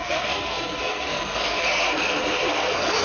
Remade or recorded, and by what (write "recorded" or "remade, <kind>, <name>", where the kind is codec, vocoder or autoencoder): remade, codec, SNAC